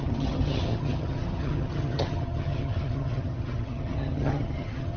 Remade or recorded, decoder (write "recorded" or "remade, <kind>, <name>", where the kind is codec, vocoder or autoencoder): remade, vocoder, HiFi-GAN